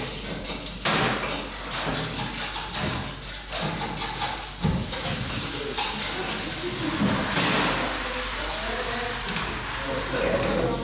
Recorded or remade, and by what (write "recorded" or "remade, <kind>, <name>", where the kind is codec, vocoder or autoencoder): recorded